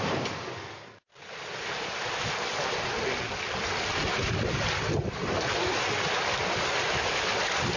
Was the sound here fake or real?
real